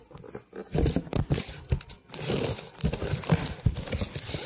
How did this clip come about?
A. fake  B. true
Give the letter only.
B